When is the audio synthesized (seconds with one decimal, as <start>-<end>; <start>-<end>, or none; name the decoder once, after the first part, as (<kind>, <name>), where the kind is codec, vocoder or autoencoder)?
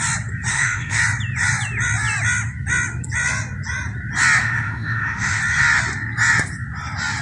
0.5-1.0 (autoencoder, DAC-VAE); 4.4-5.4